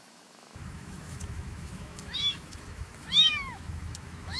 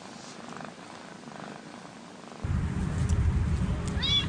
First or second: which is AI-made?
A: first